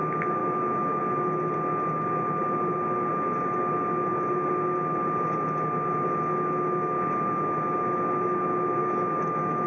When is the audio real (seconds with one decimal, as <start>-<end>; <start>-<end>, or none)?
0.0-0.4; 1.0-8.8